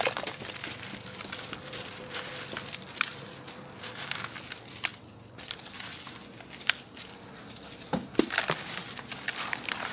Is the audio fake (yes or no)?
yes